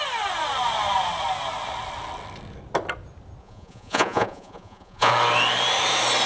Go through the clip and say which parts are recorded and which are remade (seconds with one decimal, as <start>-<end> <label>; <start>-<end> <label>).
0.0-3.4 recorded; 3.4-5.1 remade; 5.1-6.3 recorded